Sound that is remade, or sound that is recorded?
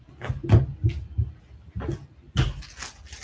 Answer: recorded